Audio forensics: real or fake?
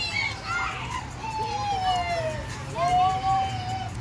real